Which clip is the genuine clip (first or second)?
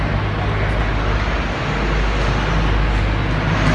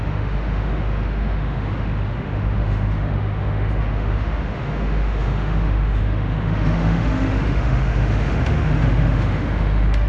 first